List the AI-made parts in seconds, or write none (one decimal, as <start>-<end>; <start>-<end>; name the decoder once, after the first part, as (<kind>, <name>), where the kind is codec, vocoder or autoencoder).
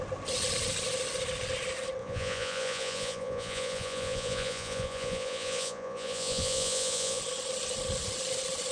2.0-7.2 (vocoder, Vocos)